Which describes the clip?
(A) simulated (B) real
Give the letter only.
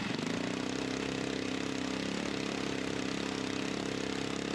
B